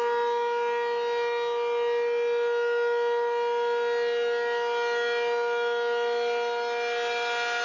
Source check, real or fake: real